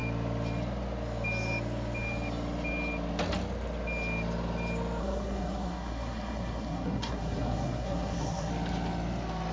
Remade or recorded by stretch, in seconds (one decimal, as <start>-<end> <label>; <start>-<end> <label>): 0.0-5.0 recorded; 5.0-8.5 remade; 8.5-9.5 recorded